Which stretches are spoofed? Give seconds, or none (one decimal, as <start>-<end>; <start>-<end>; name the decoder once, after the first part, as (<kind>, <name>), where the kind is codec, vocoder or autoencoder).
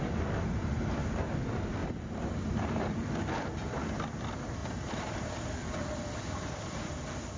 1.8-3.4 (vocoder, BigVGAN v2); 4.6-5.3